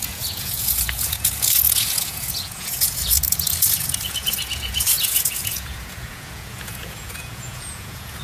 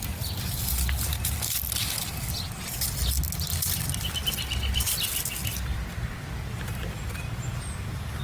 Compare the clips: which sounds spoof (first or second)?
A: first